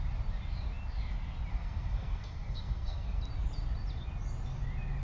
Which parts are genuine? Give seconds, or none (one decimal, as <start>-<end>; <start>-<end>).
0.0-1.5; 3.2-5.0